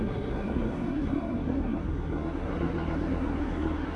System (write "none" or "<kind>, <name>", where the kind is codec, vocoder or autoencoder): codec, SNAC